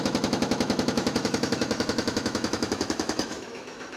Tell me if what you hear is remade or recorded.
remade